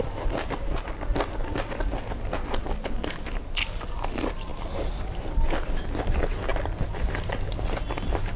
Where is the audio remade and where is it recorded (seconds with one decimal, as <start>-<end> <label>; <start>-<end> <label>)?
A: 0.0-8.4 recorded